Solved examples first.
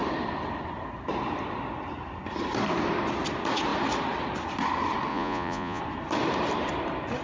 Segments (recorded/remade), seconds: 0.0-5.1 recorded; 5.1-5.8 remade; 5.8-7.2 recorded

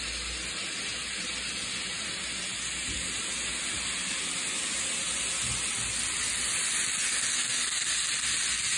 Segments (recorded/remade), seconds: 0.0-8.8 recorded

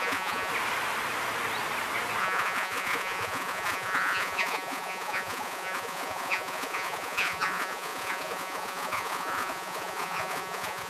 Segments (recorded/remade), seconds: 0.0-0.5 remade; 0.5-2.2 recorded; 2.2-10.9 remade

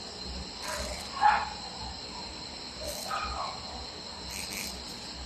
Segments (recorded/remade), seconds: 0.0-0.9 recorded; 0.9-3.4 remade; 3.4-5.3 recorded

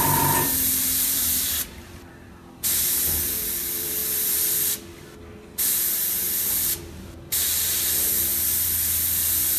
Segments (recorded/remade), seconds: 0.0-4.0 remade; 4.0-5.9 recorded; 5.9-8.3 remade; 8.3-9.6 recorded